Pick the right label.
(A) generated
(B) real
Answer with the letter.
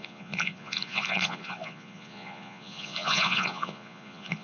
A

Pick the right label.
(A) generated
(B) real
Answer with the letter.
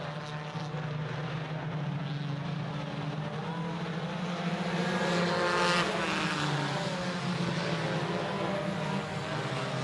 B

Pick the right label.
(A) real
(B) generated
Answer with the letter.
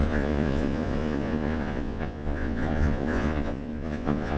B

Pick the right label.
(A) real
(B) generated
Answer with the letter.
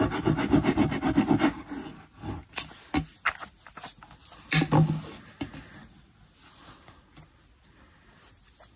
A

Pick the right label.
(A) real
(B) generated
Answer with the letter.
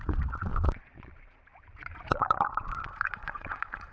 B